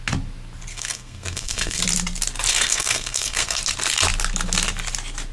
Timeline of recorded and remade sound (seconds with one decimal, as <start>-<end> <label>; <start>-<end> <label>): 0.0-0.7 recorded; 0.7-1.8 remade; 1.8-2.5 recorded; 2.5-3.6 remade; 3.6-5.3 recorded